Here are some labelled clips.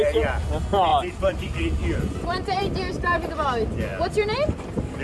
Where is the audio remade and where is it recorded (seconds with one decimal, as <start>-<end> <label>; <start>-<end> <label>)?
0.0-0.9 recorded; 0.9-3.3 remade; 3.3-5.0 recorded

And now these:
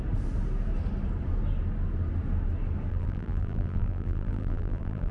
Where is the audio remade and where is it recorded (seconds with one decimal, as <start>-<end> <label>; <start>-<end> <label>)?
0.0-2.9 recorded; 2.9-5.1 remade

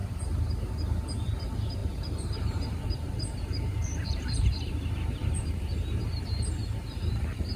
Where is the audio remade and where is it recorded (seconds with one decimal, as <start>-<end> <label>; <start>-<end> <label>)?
0.0-0.5 remade; 0.5-1.8 recorded; 1.8-6.4 remade; 6.4-7.6 recorded

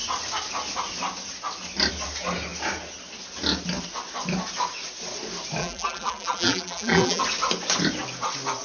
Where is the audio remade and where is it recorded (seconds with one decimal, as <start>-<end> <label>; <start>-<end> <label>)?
0.0-5.6 recorded; 5.6-7.2 remade; 7.2-8.6 recorded

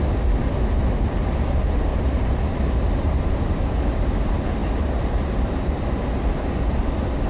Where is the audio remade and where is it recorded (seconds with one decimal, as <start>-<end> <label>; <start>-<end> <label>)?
0.0-1.9 recorded; 1.9-3.8 remade; 3.8-4.6 recorded; 4.6-5.6 remade; 5.6-7.3 recorded

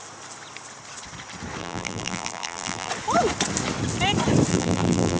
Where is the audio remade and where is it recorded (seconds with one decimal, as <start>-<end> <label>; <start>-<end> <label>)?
0.0-1.6 recorded; 1.6-2.9 remade; 2.9-4.5 recorded; 4.5-5.2 remade

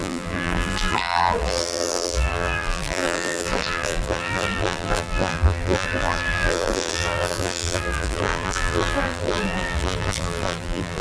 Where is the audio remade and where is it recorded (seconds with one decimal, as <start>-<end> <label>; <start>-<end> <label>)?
0.0-11.0 remade

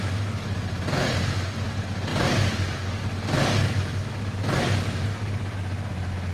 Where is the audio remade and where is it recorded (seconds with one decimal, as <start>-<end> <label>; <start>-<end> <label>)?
0.0-6.3 recorded